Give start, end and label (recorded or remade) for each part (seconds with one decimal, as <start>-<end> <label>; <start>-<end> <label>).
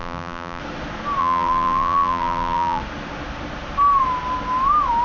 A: 0.0-0.6 remade; 0.6-1.2 recorded; 1.2-2.8 remade; 2.8-5.0 recorded